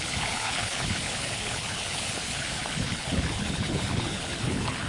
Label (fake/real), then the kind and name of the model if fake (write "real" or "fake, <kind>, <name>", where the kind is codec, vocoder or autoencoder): fake, codec, HILCodec